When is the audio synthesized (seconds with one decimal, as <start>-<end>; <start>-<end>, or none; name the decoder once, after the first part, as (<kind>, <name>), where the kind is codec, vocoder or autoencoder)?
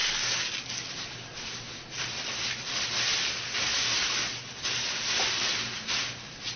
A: none